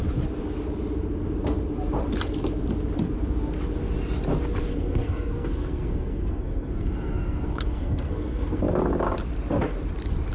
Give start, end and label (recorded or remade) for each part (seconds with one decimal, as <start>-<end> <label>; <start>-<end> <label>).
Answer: 0.0-4.7 recorded; 4.7-8.6 remade; 8.6-10.3 recorded